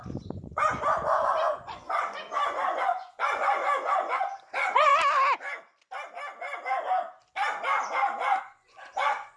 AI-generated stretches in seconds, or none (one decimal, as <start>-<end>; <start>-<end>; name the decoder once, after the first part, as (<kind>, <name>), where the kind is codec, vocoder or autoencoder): 0.0-4.9 (vocoder, Vocos); 8.4-9.4